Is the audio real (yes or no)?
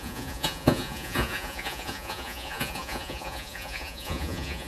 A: no